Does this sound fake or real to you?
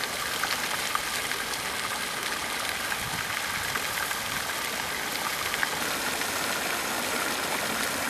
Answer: real